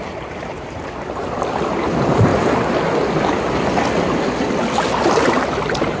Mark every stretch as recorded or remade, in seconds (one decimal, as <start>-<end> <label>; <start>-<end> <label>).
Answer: 0.0-2.3 remade; 2.3-6.0 recorded